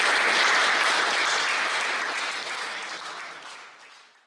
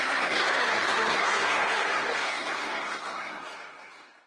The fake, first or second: second